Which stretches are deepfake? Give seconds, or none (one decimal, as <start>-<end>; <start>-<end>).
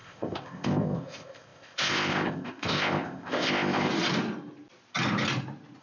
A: 0.0-3.9